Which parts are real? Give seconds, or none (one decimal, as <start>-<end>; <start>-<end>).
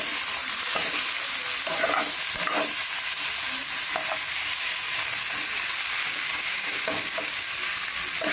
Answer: 0.0-6.0; 7.5-8.3